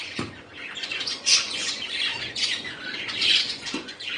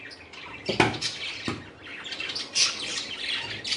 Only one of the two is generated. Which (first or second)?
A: first